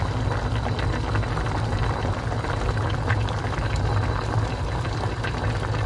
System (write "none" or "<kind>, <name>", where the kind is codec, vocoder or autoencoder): none